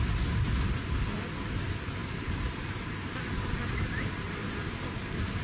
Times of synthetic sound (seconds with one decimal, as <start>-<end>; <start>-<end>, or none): 2.0-5.4

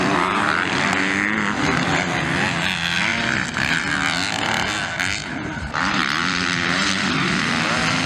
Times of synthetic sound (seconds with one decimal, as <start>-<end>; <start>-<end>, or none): 5.2-7.3